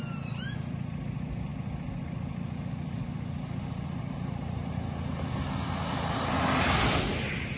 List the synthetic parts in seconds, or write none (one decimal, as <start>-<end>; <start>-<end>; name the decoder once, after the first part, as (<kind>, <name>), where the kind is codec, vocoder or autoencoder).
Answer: none